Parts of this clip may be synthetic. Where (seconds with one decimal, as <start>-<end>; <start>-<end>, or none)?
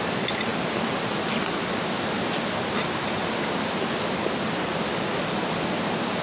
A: none